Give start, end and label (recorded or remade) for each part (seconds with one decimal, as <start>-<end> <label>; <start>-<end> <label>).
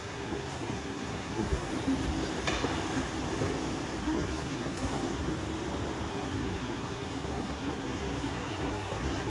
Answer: 0.0-1.7 remade; 1.7-4.0 recorded; 4.0-5.3 remade; 5.3-6.1 recorded; 6.1-9.3 remade